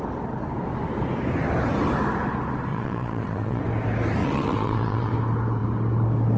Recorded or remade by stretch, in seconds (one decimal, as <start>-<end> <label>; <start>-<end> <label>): 0.0-2.7 recorded; 2.7-3.6 remade; 3.6-4.2 recorded; 4.2-5.1 remade; 5.1-6.4 recorded